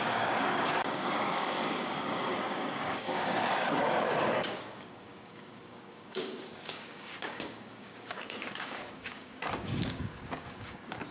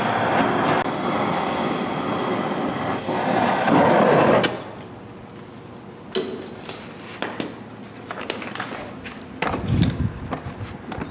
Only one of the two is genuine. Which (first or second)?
second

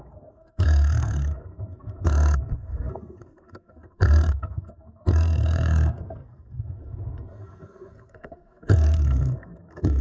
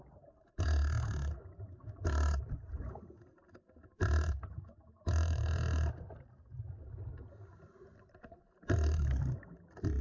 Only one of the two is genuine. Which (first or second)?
second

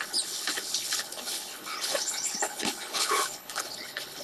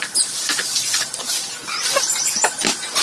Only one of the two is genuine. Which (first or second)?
second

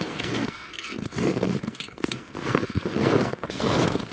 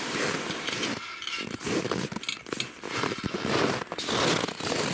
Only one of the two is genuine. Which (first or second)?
second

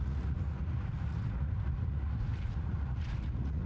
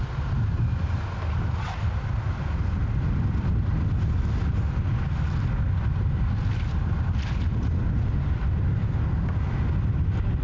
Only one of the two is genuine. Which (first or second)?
second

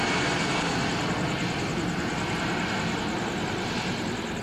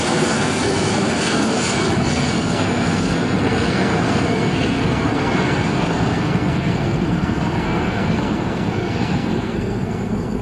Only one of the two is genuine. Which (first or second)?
first